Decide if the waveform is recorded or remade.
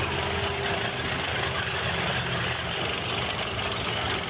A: recorded